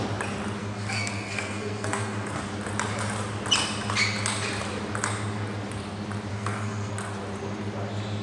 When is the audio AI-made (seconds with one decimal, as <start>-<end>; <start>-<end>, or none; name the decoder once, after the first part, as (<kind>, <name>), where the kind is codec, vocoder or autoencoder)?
0.6-2.4 (codec, SNAC); 6.3-6.9